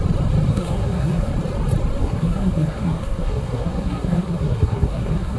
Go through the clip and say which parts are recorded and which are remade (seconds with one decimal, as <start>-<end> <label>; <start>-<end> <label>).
0.0-0.5 recorded; 0.5-1.3 remade; 1.3-2.0 recorded; 2.0-5.4 remade